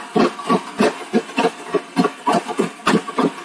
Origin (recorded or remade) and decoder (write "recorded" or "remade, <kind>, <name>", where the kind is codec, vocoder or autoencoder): recorded